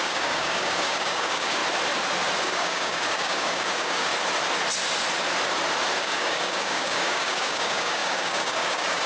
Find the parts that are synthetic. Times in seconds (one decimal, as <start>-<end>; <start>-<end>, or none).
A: 0.0-1.6; 2.4-4.1; 6.0-9.1